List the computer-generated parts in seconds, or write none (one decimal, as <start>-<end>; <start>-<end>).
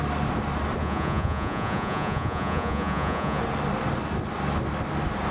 0.8-3.4